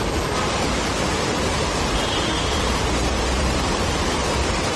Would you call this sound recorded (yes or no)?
no